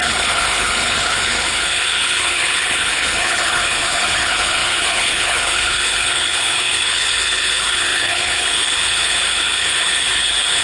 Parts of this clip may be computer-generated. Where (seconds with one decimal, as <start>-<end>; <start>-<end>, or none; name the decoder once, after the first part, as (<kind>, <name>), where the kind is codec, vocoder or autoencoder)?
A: 0.0-10.6 (codec, HILCodec)